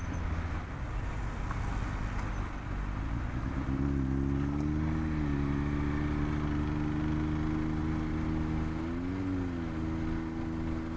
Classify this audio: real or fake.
real